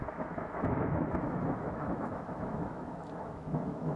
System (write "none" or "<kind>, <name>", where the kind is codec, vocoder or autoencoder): autoencoder, DAC-VAE